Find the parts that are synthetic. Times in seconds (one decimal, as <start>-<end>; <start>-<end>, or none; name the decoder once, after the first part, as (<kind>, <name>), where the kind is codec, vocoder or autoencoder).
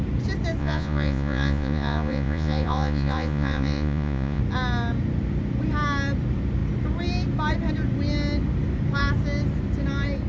0.6-4.4 (vocoder, Vocos)